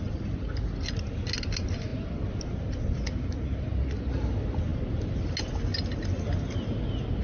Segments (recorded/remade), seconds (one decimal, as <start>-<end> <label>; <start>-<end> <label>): 0.0-7.2 recorded